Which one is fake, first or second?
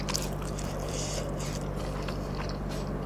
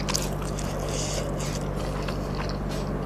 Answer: first